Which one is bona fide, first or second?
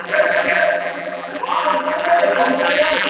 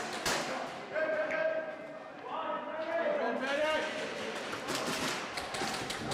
second